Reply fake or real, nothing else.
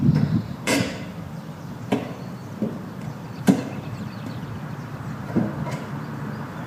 fake